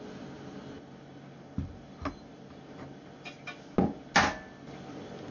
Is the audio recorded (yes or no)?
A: yes